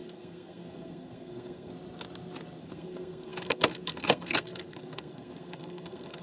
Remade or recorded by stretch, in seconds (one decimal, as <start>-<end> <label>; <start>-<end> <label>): 0.0-1.7 remade; 1.7-2.6 recorded; 2.6-6.2 remade